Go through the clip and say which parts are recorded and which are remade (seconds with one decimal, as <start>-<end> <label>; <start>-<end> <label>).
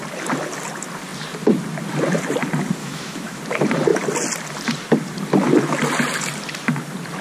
0.0-2.8 recorded; 2.8-3.4 remade; 3.4-7.2 recorded